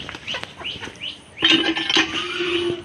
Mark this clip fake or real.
real